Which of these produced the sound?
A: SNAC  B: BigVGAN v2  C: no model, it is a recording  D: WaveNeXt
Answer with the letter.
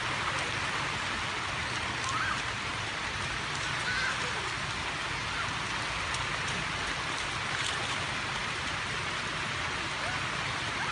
C